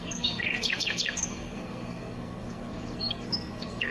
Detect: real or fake fake